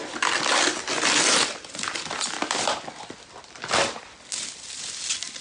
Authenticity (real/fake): real